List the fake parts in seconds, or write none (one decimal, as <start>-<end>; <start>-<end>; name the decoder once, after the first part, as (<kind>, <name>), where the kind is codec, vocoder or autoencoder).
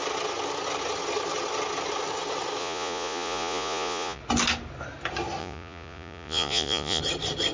2.6-4.2 (vocoder, Vocos); 5.4-7.0